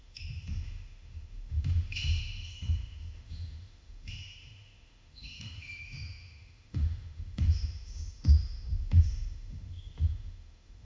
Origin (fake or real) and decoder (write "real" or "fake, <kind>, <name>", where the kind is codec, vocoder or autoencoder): fake, autoencoder, DAC-VAE